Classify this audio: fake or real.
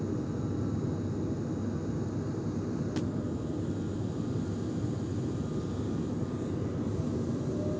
real